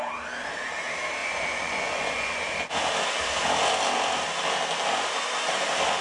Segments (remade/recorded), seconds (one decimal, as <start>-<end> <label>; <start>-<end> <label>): 0.0-1.2 recorded; 1.2-2.7 remade; 2.7-6.0 recorded